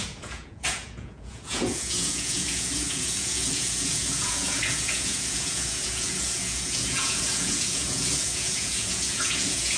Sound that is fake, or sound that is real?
fake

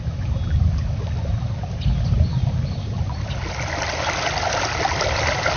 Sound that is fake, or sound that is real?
real